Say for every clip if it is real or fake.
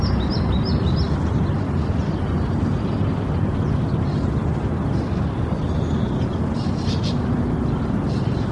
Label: real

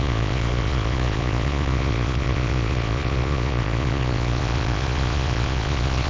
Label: fake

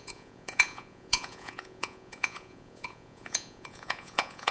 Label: fake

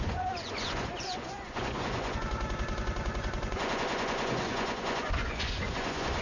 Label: fake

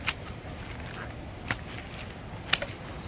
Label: real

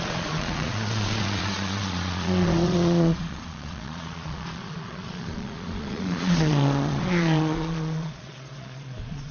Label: fake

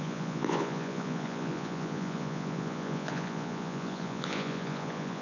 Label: fake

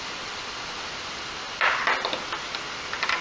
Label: real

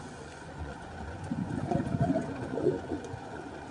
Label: fake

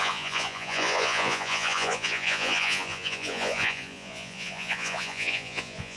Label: fake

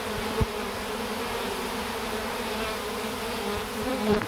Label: real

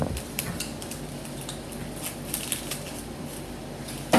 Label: real